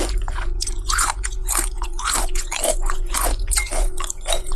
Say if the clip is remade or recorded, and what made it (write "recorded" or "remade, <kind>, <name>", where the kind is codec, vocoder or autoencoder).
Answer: remade, vocoder, Vocos